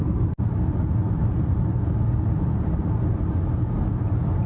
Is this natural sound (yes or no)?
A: yes